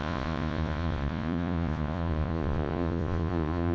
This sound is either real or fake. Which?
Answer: fake